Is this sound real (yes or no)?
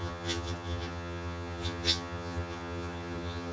no